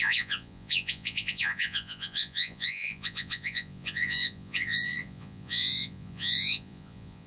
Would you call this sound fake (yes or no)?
yes